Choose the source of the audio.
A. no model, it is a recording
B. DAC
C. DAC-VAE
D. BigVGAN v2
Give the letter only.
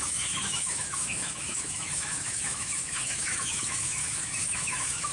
C